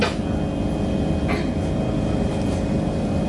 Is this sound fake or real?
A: real